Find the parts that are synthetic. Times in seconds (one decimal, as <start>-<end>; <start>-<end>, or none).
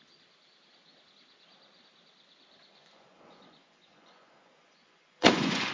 2.7-5.7